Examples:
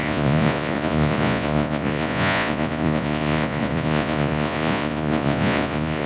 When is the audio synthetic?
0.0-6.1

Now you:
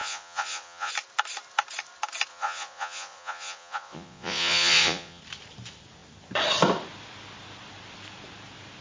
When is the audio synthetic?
0.0-0.9; 2.3-5.2

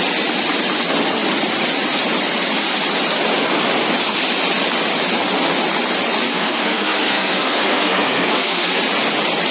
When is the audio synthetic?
6.3-8.8

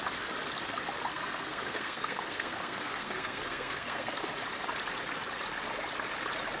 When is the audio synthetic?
1.1-4.3